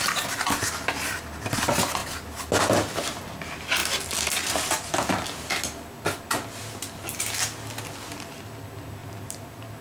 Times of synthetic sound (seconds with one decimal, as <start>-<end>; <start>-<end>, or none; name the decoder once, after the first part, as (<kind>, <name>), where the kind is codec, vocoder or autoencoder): 9.0-9.8 (vocoder, BigVGAN v2)

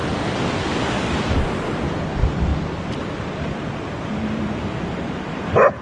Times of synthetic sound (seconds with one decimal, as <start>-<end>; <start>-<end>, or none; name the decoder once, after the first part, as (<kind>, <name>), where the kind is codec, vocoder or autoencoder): 1.2-5.8 (vocoder, BigVGAN v2)

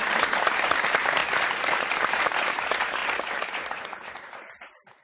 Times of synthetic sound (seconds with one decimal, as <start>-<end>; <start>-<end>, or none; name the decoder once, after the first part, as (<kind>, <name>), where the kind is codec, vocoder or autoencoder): 0.0-1.2 (vocoder, BigVGAN v2); 1.8-5.0